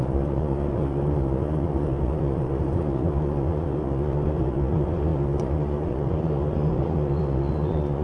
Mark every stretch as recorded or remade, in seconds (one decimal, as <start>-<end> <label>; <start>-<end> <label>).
0.0-8.0 remade